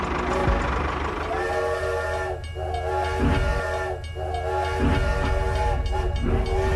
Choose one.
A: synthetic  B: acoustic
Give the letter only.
B